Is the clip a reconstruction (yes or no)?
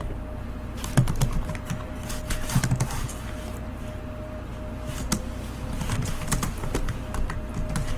no